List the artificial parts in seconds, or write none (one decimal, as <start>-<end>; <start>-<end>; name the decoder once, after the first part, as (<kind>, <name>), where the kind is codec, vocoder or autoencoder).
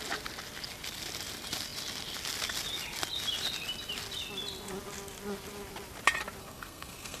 6.4-7.2 (codec, SNAC)